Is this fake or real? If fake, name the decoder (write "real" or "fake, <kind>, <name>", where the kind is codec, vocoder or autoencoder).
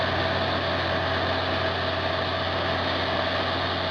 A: real